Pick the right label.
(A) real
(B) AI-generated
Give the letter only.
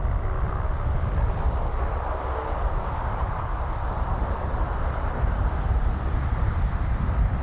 A